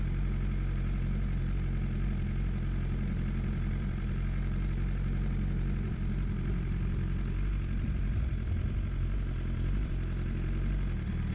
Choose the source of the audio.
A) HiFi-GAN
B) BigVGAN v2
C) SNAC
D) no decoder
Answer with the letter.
B